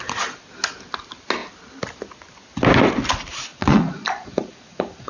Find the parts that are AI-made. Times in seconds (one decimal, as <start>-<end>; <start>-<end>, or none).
3.5-5.1